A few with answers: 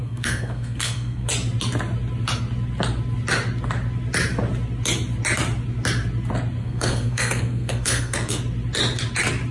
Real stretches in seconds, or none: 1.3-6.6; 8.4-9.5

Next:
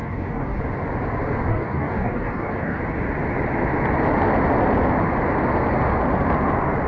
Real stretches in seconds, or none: 0.6-1.5; 2.8-6.9

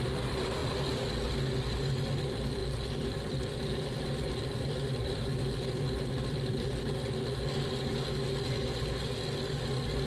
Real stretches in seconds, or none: 0.0-2.6; 4.2-5.0; 6.7-10.1

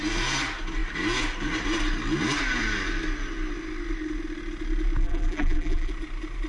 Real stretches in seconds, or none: 0.0-5.0; 5.9-6.5

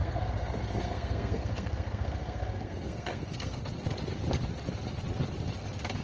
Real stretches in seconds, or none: 3.6-6.0